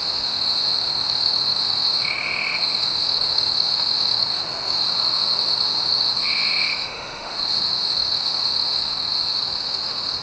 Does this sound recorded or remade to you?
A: remade